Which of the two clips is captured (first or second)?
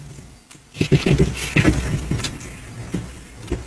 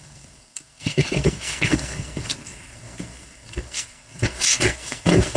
first